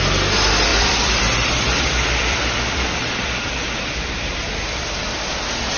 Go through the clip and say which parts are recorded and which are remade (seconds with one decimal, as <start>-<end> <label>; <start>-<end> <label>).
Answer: 0.0-0.7 recorded; 0.7-4.2 remade; 4.2-5.8 recorded